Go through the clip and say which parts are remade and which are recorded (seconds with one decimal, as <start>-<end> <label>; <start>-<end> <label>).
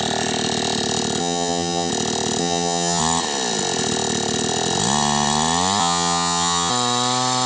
0.0-1.2 recorded; 1.2-1.9 remade; 1.9-2.4 recorded; 2.4-3.0 remade; 3.0-5.8 recorded; 5.8-6.7 remade; 6.7-7.5 recorded